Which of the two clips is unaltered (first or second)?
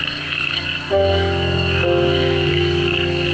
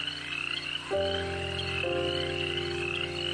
second